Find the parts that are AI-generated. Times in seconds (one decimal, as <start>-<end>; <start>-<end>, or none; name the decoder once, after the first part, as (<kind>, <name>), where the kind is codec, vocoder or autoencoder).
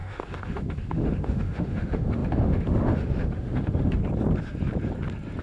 0.0-4.0 (autoencoder, DAC-VAE)